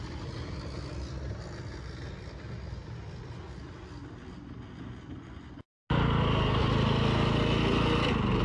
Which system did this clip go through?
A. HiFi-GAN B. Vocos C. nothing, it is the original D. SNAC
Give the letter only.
C